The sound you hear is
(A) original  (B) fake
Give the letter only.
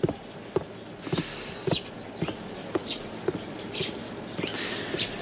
A